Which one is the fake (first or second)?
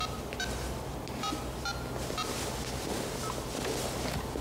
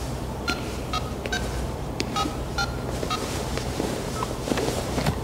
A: second